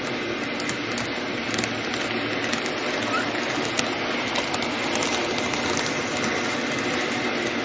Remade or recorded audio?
recorded